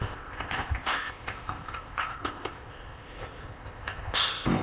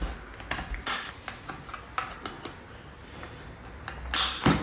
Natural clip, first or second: second